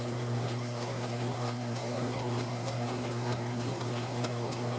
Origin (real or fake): fake